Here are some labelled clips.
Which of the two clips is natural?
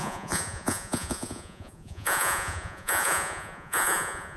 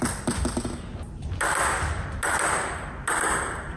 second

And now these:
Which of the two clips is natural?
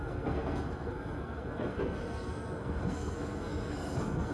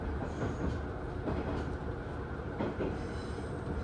second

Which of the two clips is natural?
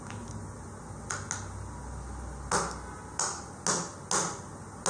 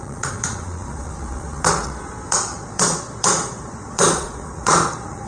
first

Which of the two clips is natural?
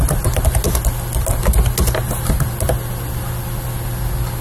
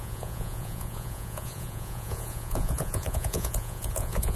first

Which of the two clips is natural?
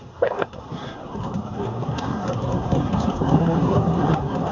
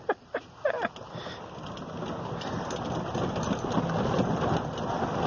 second